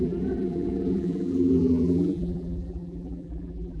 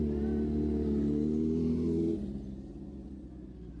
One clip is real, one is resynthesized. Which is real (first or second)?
second